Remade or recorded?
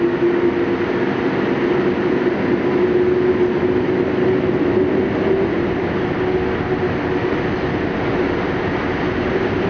recorded